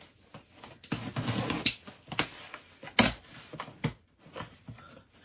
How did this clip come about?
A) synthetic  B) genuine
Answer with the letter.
B